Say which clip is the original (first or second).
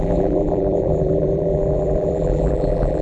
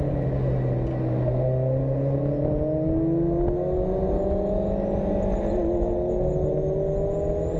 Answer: second